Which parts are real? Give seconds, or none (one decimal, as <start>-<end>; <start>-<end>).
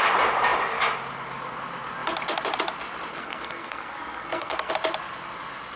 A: 0.0-3.1; 4.7-5.8